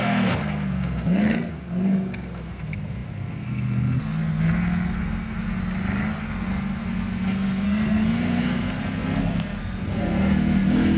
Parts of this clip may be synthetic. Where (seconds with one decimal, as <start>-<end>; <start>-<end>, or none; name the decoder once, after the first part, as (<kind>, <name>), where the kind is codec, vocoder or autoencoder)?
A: 0.0-5.6 (codec, SNAC); 6.2-11.0